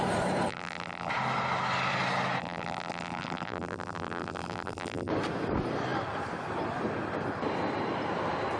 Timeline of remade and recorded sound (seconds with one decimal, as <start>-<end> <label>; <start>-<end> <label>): 0.0-0.5 recorded; 0.5-1.1 remade; 1.1-2.4 recorded; 2.4-5.1 remade; 5.1-8.6 recorded